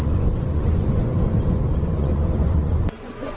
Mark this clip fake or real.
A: fake